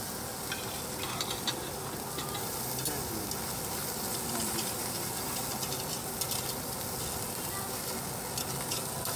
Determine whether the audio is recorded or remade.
recorded